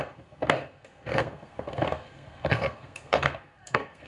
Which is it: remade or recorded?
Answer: remade